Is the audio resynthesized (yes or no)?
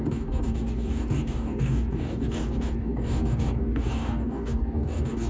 yes